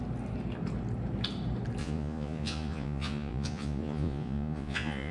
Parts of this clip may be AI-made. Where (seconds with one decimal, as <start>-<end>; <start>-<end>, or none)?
1.8-5.1